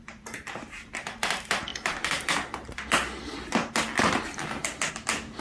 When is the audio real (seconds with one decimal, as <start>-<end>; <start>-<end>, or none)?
0.0-5.4